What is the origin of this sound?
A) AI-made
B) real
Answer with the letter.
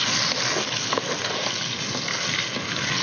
B